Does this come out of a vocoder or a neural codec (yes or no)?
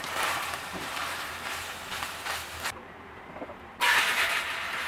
yes